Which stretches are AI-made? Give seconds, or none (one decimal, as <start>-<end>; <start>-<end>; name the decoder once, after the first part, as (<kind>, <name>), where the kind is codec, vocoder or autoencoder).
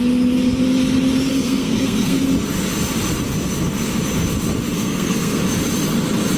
1.3-2.2 (codec, SNAC); 4.7-5.4